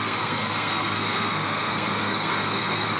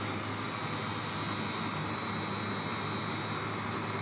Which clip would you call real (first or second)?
second